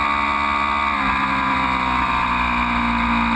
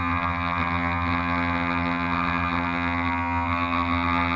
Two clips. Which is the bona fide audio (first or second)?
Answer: first